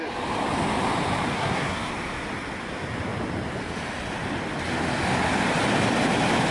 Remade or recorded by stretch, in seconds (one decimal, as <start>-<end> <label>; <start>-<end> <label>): 0.0-1.3 recorded; 1.3-1.9 remade; 1.9-6.5 recorded